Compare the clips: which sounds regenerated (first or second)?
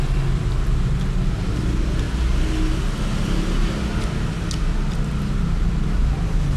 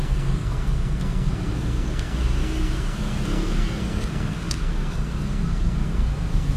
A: second